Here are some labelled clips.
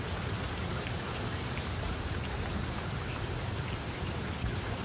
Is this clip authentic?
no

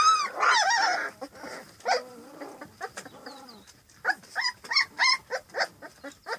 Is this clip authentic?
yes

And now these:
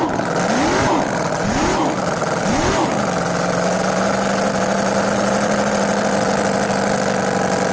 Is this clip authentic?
yes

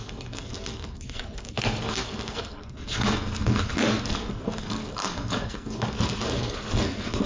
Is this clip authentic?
no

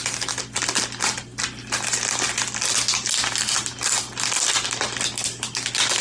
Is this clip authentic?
yes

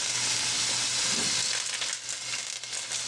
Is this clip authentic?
yes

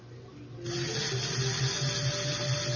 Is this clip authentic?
yes